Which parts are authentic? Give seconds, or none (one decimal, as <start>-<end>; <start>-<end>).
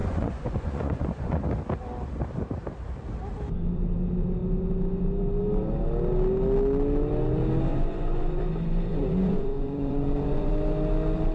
1.4-7.7; 8.4-8.9; 10.5-11.3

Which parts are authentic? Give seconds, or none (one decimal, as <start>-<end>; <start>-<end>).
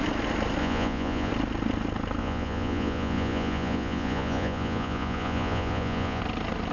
0.0-0.6; 1.3-2.2; 6.2-6.7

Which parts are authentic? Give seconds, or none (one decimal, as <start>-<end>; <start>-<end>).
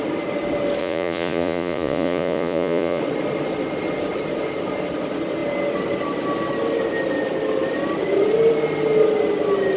0.0-0.8; 3.0-9.8